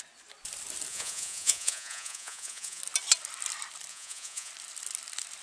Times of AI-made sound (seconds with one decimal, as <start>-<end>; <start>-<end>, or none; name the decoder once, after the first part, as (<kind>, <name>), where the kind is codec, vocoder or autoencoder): 0.9-2.8 (vocoder, Vocos); 3.9-4.5